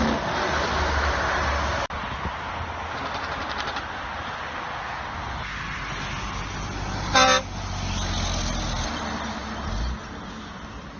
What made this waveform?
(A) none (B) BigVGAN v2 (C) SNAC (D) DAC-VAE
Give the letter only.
A